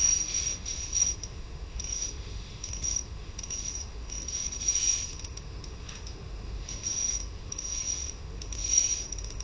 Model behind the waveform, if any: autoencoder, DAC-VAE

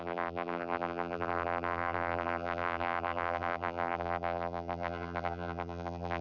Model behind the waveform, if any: vocoder, BigVGAN v2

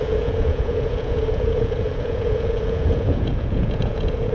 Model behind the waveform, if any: vocoder, Vocos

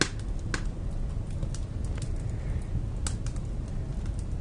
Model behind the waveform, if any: none